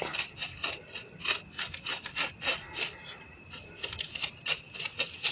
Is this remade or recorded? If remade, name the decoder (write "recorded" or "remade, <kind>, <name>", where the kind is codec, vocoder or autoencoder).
recorded